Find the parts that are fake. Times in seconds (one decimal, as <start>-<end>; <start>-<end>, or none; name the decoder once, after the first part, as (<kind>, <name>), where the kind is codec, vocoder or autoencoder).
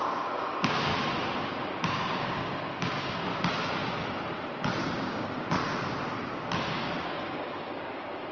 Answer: 0.0-0.9 (codec, DAC); 1.8-3.3; 4.9-5.6; 6.7-8.3